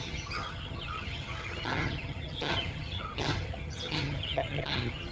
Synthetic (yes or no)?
yes